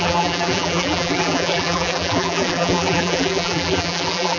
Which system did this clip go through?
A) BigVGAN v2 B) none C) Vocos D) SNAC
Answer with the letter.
A